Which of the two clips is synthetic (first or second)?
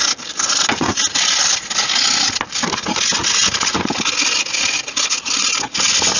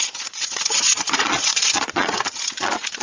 second